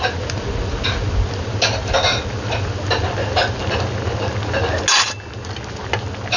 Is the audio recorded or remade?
recorded